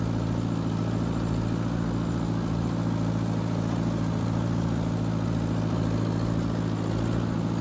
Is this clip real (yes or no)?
yes